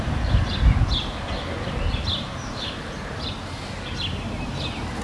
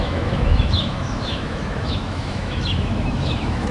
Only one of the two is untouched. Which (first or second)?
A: first